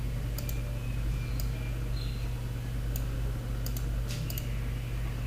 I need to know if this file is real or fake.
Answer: real